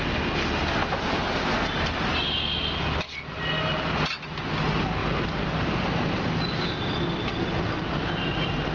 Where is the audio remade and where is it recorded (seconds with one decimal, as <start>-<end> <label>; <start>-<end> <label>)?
0.0-5.0 recorded; 5.0-5.8 remade; 5.8-8.7 recorded